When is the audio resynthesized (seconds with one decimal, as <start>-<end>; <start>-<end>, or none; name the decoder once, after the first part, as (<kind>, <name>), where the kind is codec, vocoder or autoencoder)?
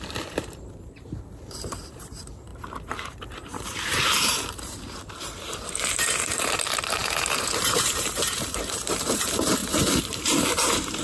0.0-11.0 (vocoder, BigVGAN v2)